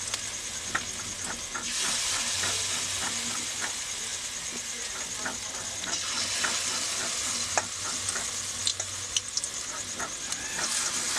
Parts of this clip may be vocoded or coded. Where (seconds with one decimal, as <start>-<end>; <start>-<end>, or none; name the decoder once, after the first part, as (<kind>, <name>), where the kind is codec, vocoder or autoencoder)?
none